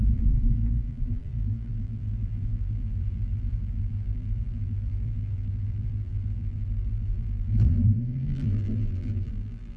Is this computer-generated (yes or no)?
yes